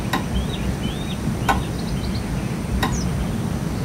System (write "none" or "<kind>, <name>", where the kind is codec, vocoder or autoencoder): none